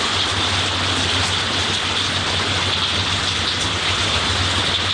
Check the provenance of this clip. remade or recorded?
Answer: recorded